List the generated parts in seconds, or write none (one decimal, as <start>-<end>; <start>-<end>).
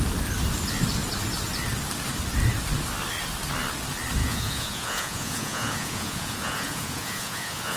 4.2-7.8